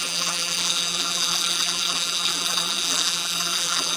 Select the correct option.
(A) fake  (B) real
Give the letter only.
A